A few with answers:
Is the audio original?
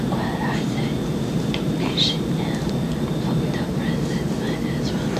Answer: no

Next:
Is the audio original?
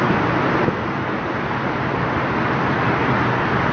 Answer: yes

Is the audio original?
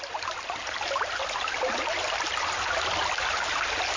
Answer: yes